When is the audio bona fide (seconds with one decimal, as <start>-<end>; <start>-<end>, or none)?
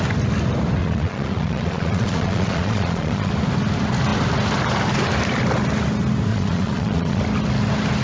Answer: 0.0-0.8; 3.3-6.3; 7.2-8.0